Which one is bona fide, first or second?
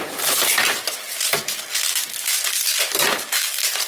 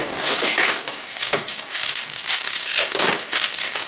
first